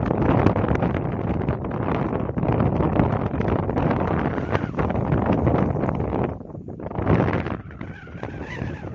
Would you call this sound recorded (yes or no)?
yes